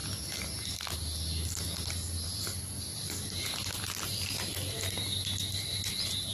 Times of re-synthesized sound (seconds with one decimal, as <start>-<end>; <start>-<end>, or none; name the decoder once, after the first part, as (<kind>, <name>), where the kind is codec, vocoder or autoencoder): none